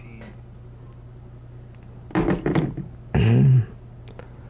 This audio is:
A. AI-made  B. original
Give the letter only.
B